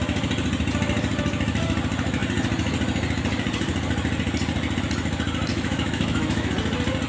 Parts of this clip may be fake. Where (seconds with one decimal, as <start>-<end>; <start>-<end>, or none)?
5.5-6.5